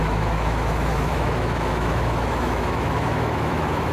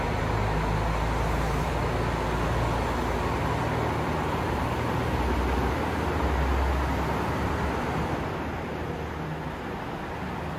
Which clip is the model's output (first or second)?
first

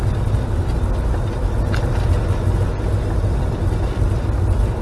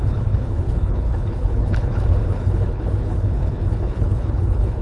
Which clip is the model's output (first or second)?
second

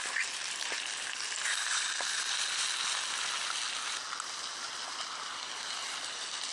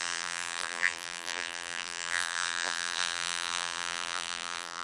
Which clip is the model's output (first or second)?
second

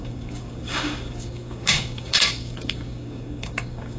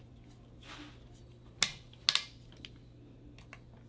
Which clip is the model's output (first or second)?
first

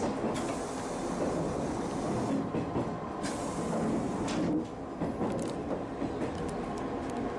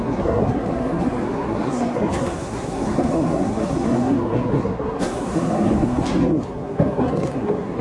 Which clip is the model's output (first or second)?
second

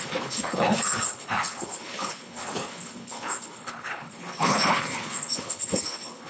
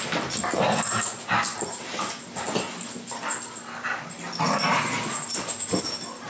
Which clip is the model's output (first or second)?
first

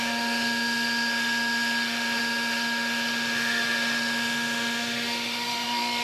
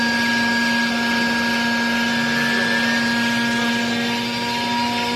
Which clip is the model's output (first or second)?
first